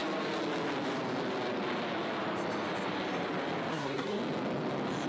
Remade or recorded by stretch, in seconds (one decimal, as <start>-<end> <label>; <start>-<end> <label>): 0.0-3.7 recorded; 3.7-4.2 remade; 4.2-5.1 recorded